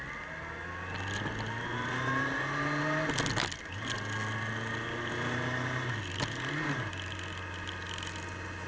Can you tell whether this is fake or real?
real